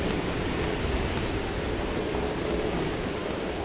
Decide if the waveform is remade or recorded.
recorded